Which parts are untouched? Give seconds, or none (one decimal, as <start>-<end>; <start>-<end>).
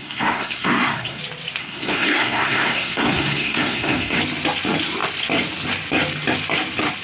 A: 1.2-1.6; 4.2-7.0